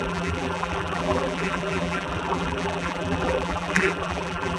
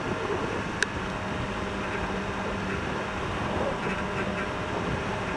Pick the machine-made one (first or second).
first